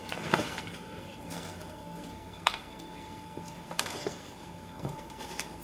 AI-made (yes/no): yes